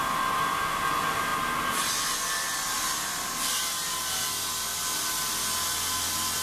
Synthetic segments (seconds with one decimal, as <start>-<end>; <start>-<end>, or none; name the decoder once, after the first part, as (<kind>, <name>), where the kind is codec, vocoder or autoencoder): none